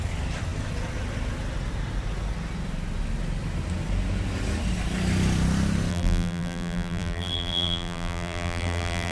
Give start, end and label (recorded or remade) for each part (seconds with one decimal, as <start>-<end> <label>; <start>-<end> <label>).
0.0-5.9 recorded; 5.9-9.1 remade